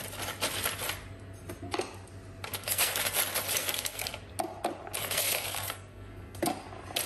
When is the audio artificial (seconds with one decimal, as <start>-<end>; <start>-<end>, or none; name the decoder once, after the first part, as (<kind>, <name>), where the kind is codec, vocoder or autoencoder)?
2.5-3.2 (codec, SNAC); 3.6-4.1; 5.0-6.4